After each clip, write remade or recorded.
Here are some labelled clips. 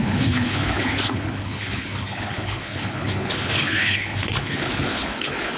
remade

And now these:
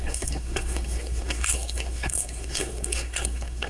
remade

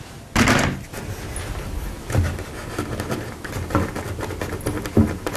recorded